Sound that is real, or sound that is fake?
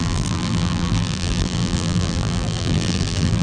fake